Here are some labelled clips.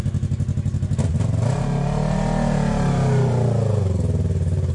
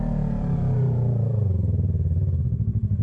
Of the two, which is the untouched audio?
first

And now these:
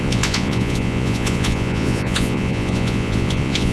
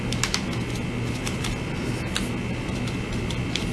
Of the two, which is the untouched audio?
second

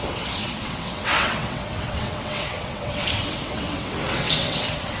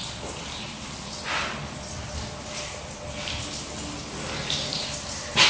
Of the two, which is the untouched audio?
second